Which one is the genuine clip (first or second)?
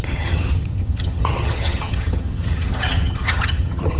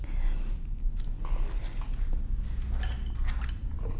second